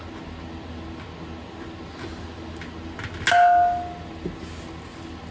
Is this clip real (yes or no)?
yes